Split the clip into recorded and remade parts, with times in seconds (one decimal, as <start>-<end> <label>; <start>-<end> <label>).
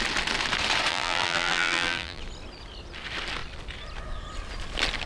0.0-0.9 recorded; 0.9-2.2 remade; 2.2-5.1 recorded